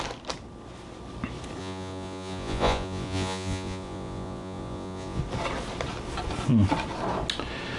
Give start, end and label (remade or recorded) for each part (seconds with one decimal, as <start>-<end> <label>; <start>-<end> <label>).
0.0-1.6 recorded; 1.6-5.2 remade; 5.2-7.8 recorded